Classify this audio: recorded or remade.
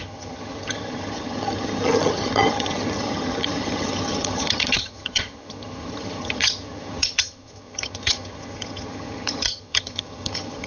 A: remade